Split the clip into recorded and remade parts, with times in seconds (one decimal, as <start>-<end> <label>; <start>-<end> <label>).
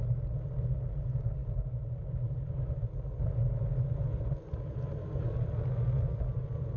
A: 0.0-6.8 recorded